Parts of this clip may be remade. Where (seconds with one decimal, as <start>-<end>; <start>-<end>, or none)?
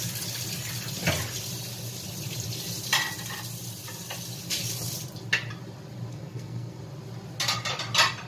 6.1-6.8